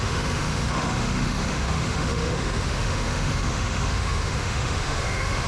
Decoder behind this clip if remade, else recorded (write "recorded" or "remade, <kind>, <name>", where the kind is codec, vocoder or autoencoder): remade, autoencoder, DAC-VAE